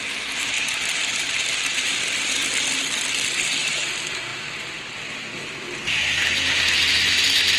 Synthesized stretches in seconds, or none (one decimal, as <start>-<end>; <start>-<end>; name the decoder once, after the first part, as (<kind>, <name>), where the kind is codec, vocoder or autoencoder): 1.0-2.0 (vocoder, BigVGAN v2); 4.3-5.4